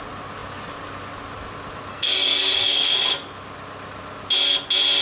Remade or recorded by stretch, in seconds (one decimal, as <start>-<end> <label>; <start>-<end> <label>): 0.0-1.9 recorded; 1.9-3.1 remade; 3.1-5.0 recorded